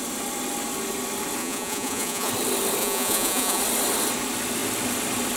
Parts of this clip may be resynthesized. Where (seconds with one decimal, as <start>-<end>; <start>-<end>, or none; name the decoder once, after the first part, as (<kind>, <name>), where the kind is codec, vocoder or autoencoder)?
1.4-2.3 (vocoder, Vocos); 2.8-3.6